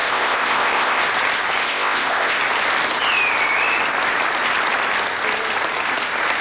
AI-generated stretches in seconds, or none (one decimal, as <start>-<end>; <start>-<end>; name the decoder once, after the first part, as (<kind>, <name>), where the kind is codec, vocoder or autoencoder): 0.0-1.0 (codec, ZipCodec); 1.6-2.4